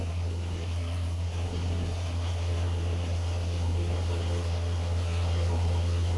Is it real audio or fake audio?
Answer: fake